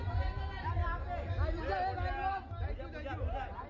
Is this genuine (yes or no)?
yes